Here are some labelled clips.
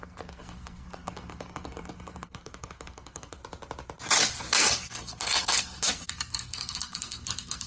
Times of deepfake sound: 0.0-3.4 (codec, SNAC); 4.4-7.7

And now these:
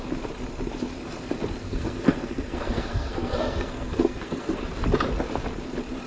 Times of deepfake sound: 1.6-4.6 (codec, SNAC)

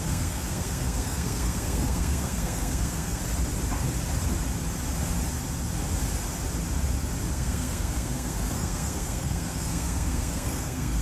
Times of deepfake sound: 0.0-3.2 (codec, SNAC); 7.3-11.0